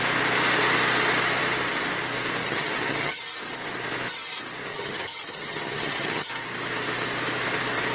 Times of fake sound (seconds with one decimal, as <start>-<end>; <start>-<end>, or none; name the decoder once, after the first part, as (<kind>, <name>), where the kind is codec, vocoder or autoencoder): 2.4-3.2 (vocoder, HiFi-GAN); 4.7-6.3